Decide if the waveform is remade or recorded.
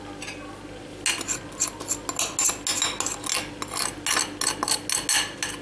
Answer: recorded